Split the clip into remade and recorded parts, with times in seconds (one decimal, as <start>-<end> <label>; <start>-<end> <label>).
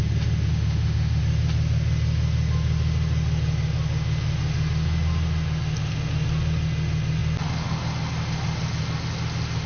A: 0.0-0.5 recorded; 0.5-1.2 remade; 1.2-9.7 recorded